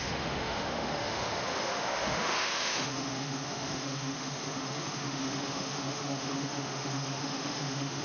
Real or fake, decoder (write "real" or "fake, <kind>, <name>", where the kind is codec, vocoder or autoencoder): fake, autoencoder, DAC-VAE